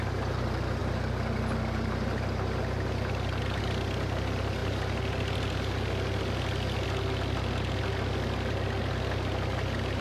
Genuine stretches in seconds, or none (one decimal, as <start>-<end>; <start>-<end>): 0.0-10.0